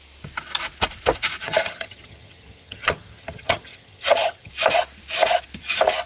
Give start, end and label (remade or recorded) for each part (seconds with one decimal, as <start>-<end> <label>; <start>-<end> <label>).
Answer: 0.0-1.4 recorded; 1.4-4.5 remade; 4.5-6.1 recorded